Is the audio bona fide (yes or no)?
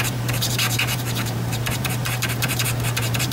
no